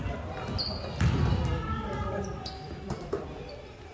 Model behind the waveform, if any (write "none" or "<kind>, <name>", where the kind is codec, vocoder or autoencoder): none